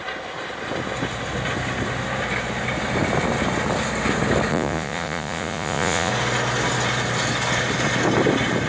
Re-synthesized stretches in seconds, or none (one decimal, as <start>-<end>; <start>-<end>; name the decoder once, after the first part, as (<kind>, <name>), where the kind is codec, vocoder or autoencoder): 4.5-6.1 (vocoder, Vocos)